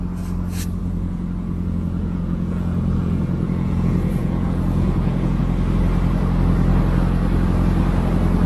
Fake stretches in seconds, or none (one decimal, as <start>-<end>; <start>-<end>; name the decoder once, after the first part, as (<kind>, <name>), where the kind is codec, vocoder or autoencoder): 0.8-5.4 (vocoder, Vocos)